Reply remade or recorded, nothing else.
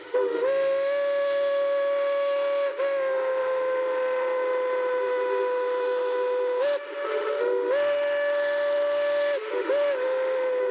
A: remade